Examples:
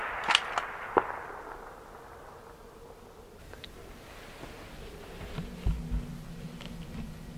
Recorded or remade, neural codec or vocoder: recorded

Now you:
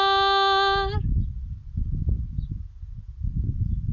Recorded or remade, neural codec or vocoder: recorded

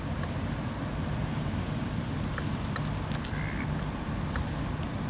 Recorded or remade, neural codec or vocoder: recorded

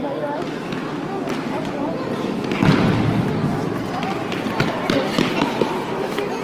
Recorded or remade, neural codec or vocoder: recorded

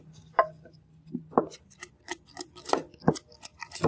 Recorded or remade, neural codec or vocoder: recorded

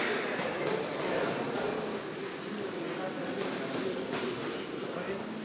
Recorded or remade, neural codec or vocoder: recorded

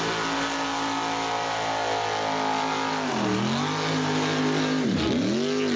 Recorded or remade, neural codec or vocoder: recorded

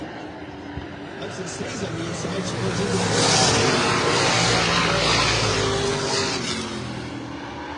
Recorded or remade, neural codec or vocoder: recorded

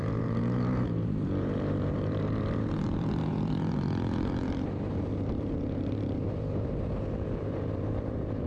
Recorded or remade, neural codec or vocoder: remade, vocoder, BigVGAN v2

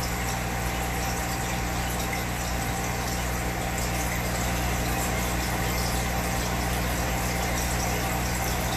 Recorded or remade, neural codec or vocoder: recorded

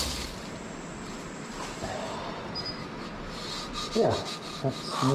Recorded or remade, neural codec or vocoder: recorded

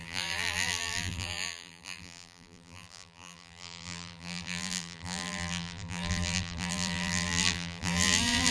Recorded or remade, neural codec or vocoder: remade, vocoder, BigVGAN v2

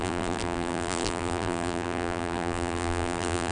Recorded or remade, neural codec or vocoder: remade, vocoder, BigVGAN v2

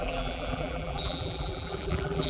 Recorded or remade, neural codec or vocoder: remade, vocoder, BigVGAN v2